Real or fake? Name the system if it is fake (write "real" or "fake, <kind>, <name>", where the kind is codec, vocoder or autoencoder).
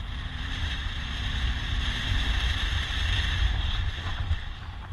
fake, vocoder, BigVGAN v2